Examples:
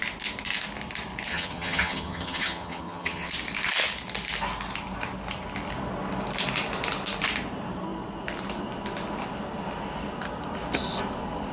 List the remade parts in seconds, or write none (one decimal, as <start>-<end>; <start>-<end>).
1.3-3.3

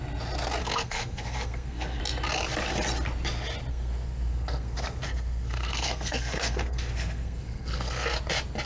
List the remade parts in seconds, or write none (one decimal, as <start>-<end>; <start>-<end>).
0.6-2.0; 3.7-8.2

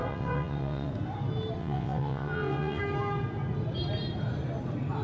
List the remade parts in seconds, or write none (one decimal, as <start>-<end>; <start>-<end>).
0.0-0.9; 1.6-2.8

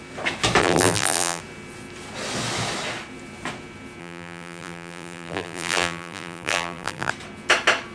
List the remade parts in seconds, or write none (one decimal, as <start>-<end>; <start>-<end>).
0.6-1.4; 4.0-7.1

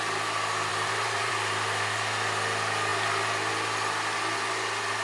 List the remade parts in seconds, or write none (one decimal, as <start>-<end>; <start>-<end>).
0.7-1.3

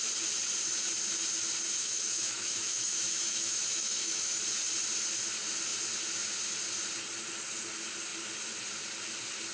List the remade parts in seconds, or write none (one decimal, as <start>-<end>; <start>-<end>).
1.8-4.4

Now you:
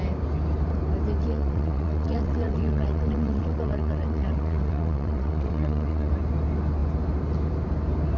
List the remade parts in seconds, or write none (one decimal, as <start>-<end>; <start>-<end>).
1.2-6.1